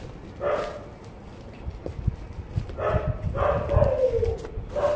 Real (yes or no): yes